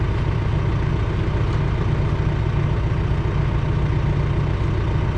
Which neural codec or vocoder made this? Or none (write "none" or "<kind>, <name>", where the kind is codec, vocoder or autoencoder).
none